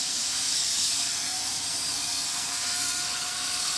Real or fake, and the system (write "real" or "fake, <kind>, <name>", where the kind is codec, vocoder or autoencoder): fake, codec, SNAC